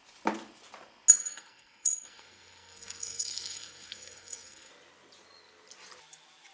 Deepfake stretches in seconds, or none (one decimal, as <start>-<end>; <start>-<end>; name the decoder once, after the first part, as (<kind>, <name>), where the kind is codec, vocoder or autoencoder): 1.2-4.7 (codec, SNAC)